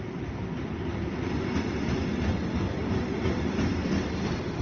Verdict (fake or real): real